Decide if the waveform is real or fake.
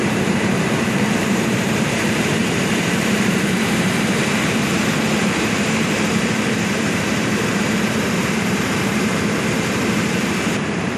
fake